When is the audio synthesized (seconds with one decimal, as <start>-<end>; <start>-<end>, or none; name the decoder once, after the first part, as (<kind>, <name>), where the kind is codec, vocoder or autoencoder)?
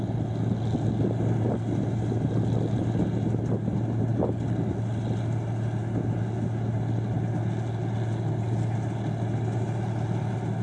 none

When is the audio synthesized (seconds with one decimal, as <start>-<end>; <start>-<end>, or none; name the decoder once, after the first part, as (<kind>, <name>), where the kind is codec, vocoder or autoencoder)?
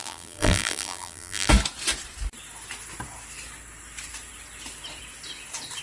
0.0-1.5 (vocoder, BigVGAN v2)